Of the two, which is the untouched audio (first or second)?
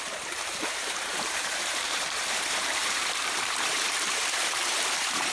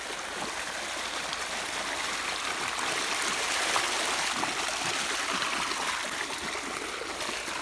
second